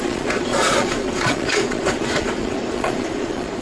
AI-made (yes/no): yes